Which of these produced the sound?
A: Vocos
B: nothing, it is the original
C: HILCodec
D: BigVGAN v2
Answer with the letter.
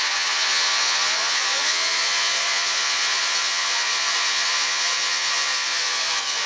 A